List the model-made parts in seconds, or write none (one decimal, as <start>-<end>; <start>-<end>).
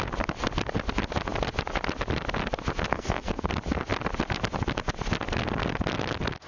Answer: 2.9-3.5